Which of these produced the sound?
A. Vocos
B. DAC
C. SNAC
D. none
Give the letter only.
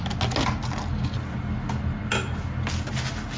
D